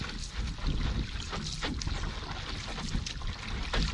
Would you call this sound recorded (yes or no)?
yes